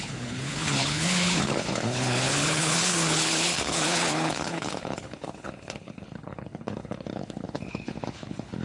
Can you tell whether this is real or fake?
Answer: fake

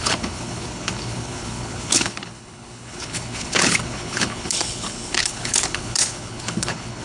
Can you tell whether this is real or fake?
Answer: fake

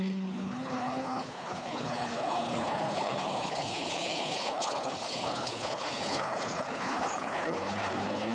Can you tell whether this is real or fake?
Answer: fake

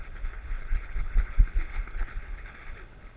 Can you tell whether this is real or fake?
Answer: fake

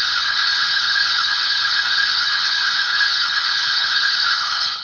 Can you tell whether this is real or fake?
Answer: fake